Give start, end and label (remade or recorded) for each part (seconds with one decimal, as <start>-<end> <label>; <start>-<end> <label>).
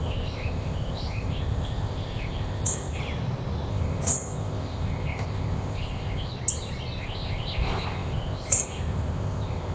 0.0-3.0 remade; 3.0-3.7 recorded; 3.7-6.3 remade; 6.3-7.0 recorded; 7.0-9.7 remade